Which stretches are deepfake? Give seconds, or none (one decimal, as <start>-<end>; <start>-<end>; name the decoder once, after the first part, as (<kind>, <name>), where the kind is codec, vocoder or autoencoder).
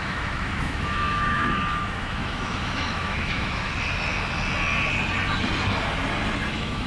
0.0-3.7 (autoencoder, DAC-VAE); 6.5-6.9